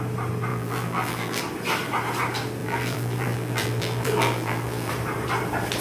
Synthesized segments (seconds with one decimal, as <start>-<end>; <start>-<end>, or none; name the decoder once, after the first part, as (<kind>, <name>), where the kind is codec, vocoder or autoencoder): 0.5-1.4 (vocoder, BigVGAN v2); 2.6-4.9